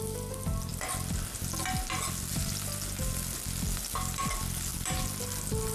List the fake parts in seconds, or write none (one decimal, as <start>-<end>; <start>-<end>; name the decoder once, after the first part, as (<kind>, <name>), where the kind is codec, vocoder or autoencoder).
none